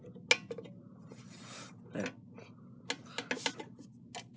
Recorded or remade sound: recorded